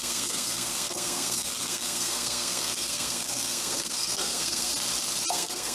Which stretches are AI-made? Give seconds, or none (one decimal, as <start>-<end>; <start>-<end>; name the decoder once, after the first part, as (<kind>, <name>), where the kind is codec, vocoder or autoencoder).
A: 0.0-4.7 (codec, SNAC); 5.3-5.7